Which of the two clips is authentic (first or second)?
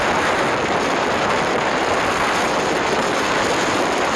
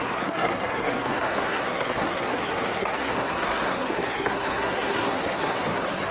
first